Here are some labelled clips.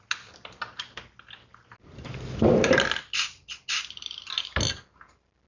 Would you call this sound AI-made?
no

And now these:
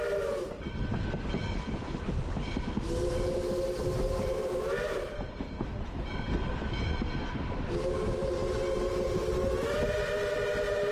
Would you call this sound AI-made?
no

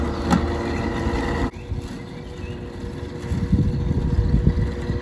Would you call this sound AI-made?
no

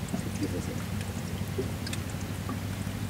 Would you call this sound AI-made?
no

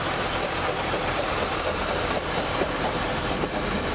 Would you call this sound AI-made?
yes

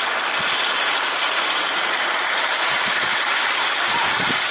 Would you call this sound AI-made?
yes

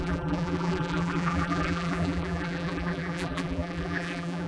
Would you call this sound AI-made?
yes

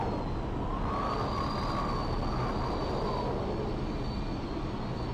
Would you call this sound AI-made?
no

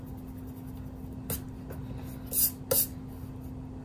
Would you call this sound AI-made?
no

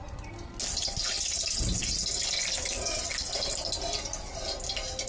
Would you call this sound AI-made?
no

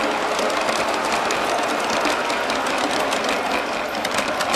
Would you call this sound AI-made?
no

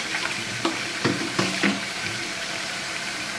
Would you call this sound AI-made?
yes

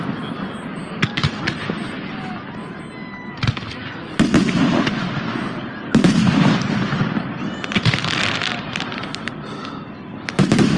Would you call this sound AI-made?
no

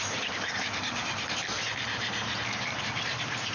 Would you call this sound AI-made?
yes